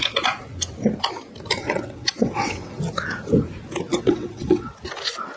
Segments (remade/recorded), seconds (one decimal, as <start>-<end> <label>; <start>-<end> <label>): 0.0-1.6 recorded; 1.6-2.8 remade; 2.8-3.9 recorded; 3.9-4.7 remade; 4.7-5.4 recorded